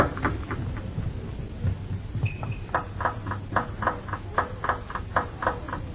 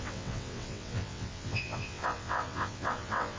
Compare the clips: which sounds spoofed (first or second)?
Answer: second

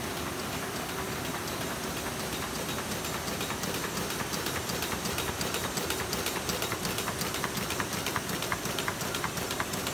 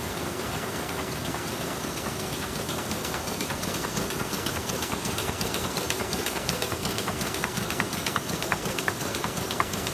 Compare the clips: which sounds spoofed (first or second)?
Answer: second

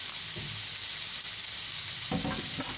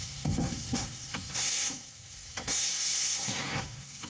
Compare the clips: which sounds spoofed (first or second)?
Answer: second